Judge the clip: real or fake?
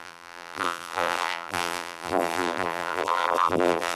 fake